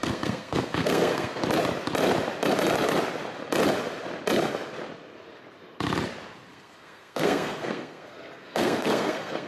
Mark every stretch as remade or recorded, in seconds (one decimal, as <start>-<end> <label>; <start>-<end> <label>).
0.0-1.4 remade; 1.4-6.5 recorded; 6.5-9.5 remade